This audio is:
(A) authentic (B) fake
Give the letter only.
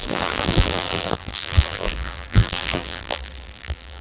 B